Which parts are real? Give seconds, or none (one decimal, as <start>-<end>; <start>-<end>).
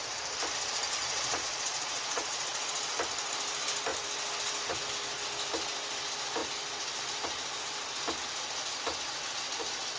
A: 0.0-1.0; 2.9-10.0